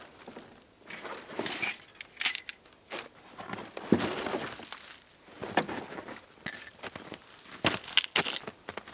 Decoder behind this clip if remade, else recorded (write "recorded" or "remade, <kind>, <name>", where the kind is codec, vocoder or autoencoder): recorded